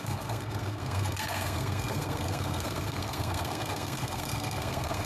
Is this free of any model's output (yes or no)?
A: no